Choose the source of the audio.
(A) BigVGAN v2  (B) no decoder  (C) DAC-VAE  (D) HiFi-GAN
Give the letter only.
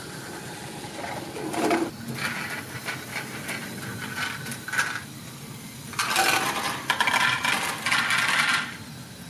B